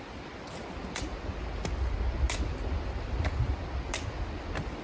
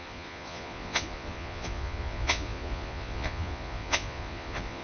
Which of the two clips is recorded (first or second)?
first